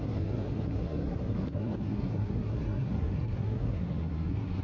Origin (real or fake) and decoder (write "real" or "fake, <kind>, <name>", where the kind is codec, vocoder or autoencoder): fake, codec, SNAC